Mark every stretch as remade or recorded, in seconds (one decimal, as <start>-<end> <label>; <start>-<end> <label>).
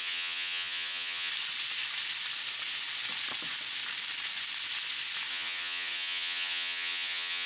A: 0.0-1.3 remade; 1.3-5.3 recorded; 5.3-7.5 remade